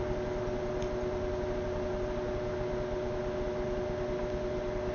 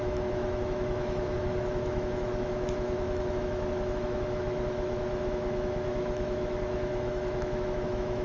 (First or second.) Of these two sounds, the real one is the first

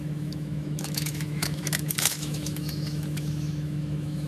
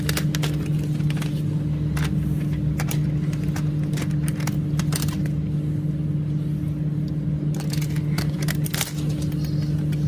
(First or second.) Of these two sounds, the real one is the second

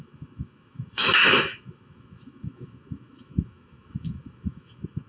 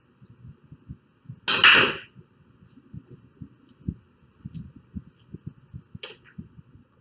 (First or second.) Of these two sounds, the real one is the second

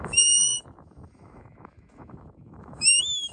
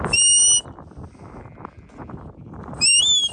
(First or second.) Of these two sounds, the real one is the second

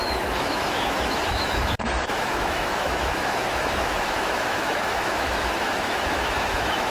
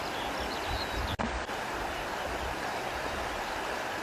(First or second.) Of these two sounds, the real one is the second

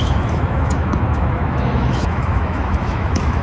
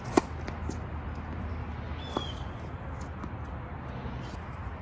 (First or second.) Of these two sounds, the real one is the second